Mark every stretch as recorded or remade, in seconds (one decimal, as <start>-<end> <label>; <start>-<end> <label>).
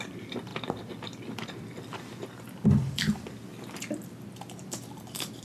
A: 0.0-3.5 remade; 3.5-4.4 recorded; 4.4-5.4 remade